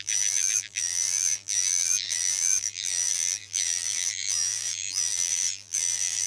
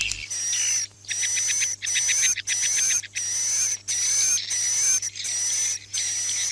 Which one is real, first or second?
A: second